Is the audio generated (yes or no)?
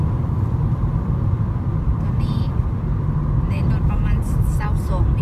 yes